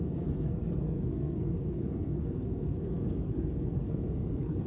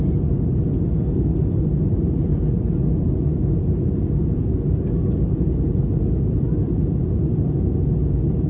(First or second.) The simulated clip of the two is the first